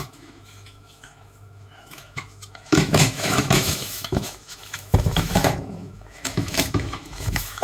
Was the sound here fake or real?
fake